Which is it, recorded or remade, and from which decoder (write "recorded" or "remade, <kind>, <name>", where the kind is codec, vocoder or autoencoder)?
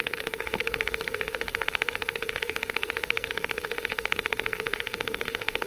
remade, codec, SNAC